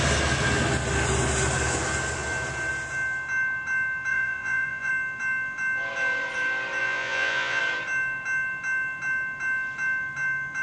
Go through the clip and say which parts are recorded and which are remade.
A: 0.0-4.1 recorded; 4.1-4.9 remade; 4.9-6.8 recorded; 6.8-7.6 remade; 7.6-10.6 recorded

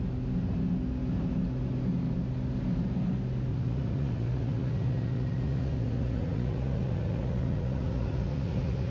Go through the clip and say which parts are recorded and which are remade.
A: 0.0-3.5 recorded; 3.5-8.9 remade

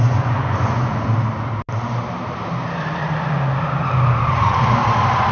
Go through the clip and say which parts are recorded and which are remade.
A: 0.0-1.1 remade; 1.1-4.3 recorded; 4.3-4.8 remade; 4.8-5.3 recorded